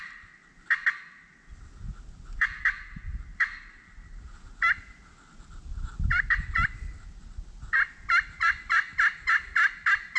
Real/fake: real